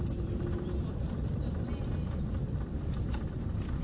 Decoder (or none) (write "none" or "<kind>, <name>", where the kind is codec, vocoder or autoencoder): vocoder, BigVGAN v2